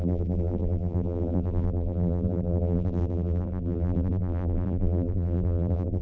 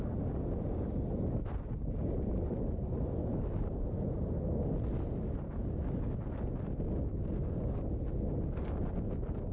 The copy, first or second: first